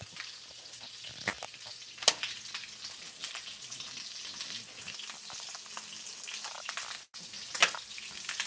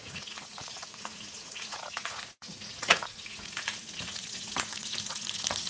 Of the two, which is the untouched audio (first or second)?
first